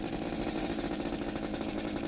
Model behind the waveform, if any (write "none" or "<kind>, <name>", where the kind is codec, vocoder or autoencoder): none